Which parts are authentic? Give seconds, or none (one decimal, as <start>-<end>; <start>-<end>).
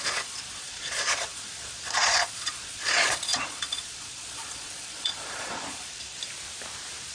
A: 6.2-7.1